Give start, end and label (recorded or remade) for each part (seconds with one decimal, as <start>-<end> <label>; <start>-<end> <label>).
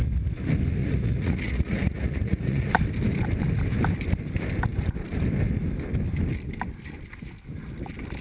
0.0-0.8 recorded; 0.8-2.7 remade; 2.7-8.2 recorded